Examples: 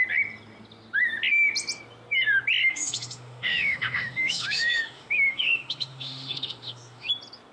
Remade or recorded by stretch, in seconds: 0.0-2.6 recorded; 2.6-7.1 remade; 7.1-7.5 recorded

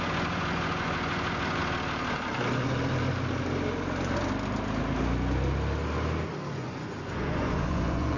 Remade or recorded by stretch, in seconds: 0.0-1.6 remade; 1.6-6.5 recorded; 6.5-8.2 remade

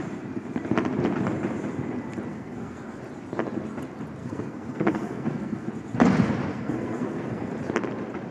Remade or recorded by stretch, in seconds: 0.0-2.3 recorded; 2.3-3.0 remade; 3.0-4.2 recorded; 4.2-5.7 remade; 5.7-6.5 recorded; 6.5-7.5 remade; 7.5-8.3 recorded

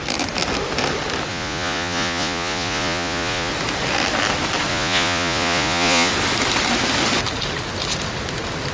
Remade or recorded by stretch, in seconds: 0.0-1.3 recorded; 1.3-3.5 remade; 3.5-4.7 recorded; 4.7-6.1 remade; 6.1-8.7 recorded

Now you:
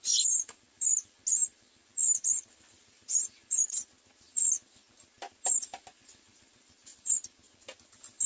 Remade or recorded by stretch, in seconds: 0.0-1.4 recorded; 1.4-3.9 remade; 3.9-8.3 recorded